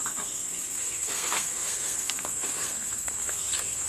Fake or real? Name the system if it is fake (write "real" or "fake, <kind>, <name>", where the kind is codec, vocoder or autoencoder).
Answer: fake, codec, SNAC